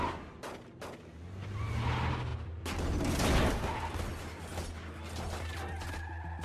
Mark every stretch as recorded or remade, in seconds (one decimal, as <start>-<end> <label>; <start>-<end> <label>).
0.0-6.4 recorded